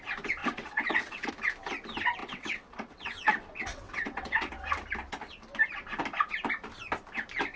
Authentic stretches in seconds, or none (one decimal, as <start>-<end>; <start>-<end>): 0.0-0.4; 1.3-2.2; 4.5-7.6